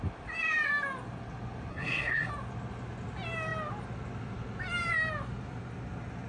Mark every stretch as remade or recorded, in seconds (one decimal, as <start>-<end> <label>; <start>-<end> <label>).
0.0-1.7 recorded; 1.7-2.3 remade; 2.3-6.3 recorded